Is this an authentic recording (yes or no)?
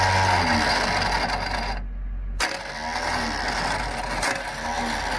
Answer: yes